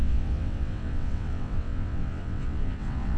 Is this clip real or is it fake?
fake